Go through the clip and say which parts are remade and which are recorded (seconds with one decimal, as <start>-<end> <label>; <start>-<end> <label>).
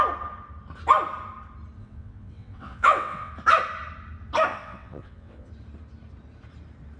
0.0-1.8 recorded; 1.8-3.3 remade; 3.3-4.5 recorded; 4.5-5.5 remade; 5.5-7.0 recorded